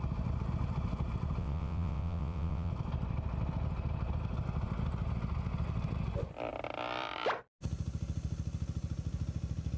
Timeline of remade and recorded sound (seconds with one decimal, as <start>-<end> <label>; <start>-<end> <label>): 0.0-1.4 recorded; 1.4-2.7 remade; 2.7-9.8 recorded